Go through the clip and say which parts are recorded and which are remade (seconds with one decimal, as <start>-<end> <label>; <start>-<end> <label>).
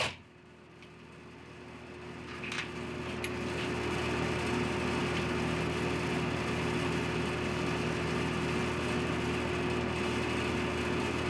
0.0-11.3 recorded